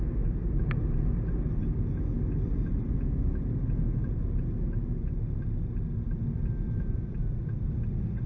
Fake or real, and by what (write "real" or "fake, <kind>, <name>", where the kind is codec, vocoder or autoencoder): real